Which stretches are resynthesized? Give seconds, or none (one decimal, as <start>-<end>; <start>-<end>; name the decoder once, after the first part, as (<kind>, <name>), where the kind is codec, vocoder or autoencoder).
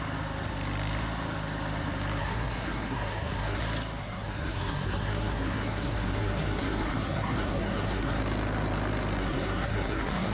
2.2-3.6 (codec, SNAC); 4.0-8.2; 9.2-10.3